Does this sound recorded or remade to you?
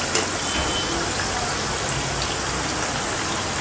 recorded